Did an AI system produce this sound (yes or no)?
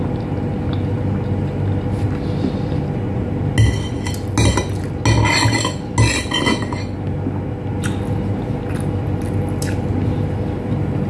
no